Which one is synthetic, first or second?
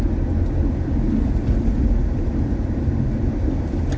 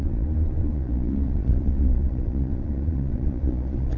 second